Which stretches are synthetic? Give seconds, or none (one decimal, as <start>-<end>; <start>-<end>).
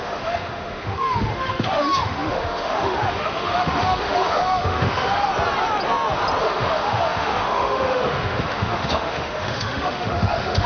0.0-5.3; 6.4-10.7